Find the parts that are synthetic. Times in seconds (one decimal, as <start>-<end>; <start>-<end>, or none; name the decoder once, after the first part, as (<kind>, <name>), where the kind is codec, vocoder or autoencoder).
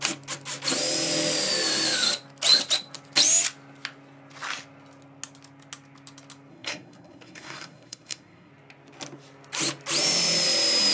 6.5-8.5 (codec, SNAC)